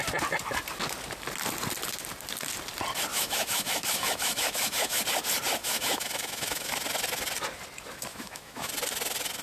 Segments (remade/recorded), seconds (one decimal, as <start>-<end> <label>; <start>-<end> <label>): 0.0-3.1 recorded; 3.1-5.0 remade; 5.0-5.6 recorded; 5.6-6.7 remade; 6.7-8.1 recorded; 8.1-8.7 remade; 8.7-9.4 recorded